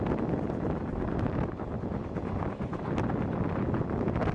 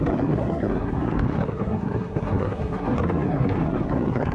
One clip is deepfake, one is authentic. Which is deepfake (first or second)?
second